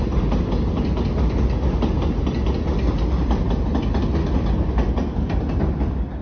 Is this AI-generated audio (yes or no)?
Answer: no